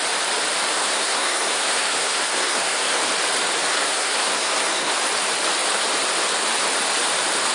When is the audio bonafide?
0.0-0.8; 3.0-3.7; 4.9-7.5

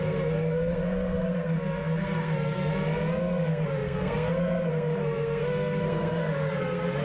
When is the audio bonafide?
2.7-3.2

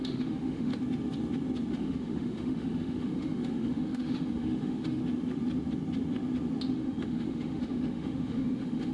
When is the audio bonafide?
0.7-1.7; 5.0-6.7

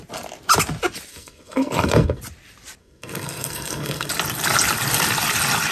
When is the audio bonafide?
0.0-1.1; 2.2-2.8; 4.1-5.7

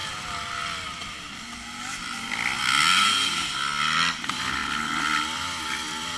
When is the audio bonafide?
0.0-6.2

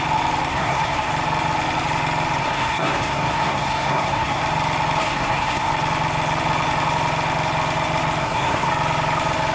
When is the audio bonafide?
0.0-0.5; 1.1-2.4; 4.4-5.0; 5.7-8.2; 8.7-9.5